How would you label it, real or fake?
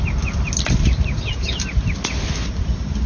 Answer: real